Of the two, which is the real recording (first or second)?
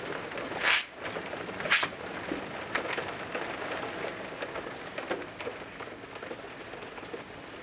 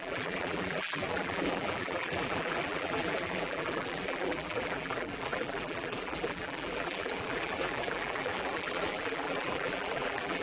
first